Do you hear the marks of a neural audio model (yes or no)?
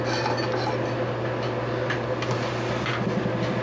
no